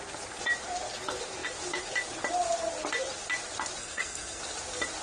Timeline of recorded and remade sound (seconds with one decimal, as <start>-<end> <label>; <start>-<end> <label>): 0.0-3.8 recorded; 3.8-4.4 remade; 4.4-5.0 recorded